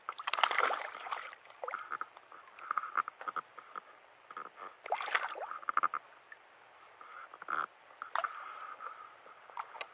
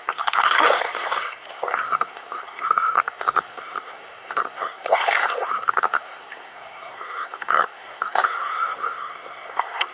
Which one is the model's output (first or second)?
second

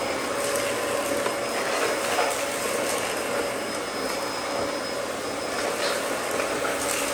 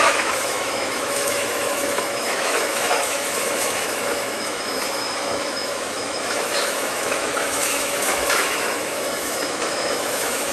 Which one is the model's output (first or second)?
second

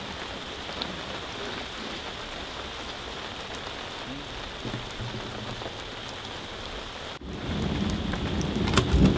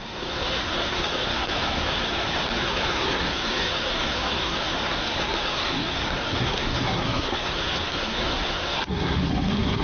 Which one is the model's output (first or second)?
second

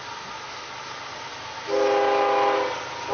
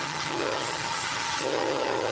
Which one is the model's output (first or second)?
second